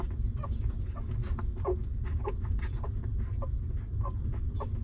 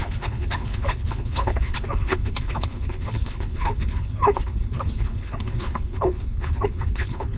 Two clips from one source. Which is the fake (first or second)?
second